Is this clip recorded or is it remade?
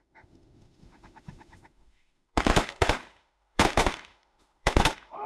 remade